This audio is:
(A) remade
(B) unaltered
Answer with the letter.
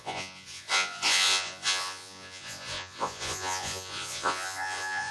A